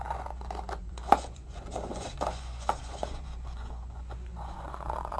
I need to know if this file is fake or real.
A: fake